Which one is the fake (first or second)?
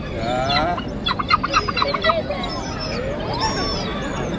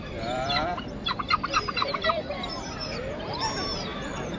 second